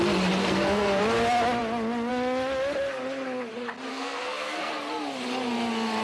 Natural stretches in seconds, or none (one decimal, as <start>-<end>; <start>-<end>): 0.0-0.4; 1.0-3.9; 4.7-6.0